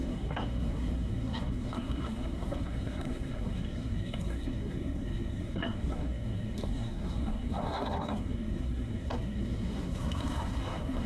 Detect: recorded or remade remade